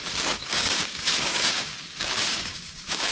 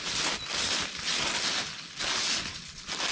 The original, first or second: second